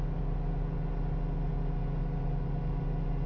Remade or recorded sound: recorded